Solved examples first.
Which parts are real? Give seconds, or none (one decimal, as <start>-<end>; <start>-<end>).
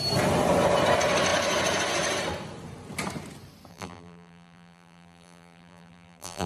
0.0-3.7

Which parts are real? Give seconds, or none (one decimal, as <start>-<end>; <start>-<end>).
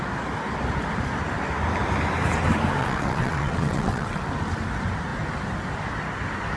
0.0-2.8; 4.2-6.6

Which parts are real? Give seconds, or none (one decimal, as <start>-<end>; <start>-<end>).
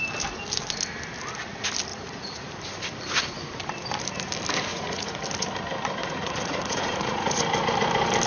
0.0-1.9; 2.5-4.7; 5.2-6.0; 7.4-8.3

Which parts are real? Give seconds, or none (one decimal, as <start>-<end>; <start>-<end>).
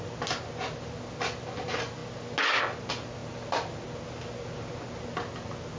0.0-5.8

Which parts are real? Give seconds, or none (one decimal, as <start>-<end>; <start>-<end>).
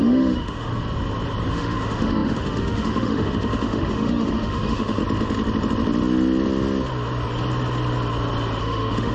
0.7-1.5; 5.0-8.6